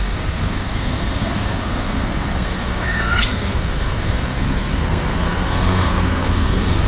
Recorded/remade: remade